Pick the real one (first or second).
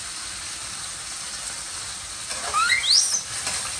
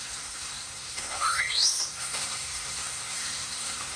first